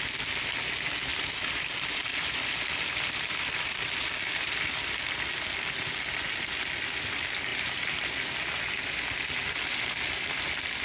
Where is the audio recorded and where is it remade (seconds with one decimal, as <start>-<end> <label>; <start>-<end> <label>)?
0.0-1.1 recorded; 1.1-5.1 remade; 5.1-7.5 recorded; 7.5-8.0 remade; 8.0-10.8 recorded